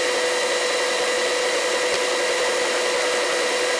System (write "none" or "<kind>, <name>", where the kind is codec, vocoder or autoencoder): none